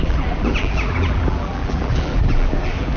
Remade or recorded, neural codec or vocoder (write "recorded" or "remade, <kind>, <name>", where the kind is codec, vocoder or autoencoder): remade, vocoder, BigVGAN v2